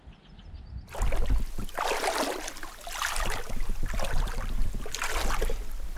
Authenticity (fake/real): real